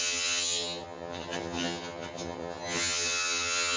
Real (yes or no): no